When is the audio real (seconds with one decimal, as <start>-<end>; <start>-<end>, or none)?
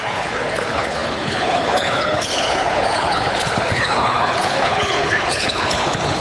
none